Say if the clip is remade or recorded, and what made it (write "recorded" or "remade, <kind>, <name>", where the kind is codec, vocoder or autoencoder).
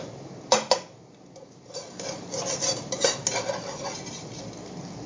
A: recorded